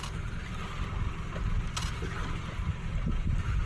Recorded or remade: recorded